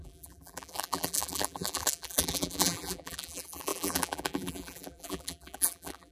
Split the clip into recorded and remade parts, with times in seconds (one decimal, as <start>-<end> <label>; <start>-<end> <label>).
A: 0.0-6.1 remade